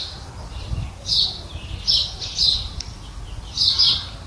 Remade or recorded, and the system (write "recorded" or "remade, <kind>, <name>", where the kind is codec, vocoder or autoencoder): recorded